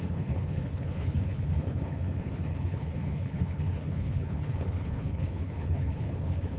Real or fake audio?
fake